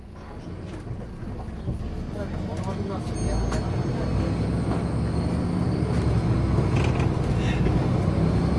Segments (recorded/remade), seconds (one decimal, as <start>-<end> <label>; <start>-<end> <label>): 0.0-8.6 recorded